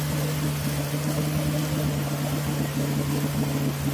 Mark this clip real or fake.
real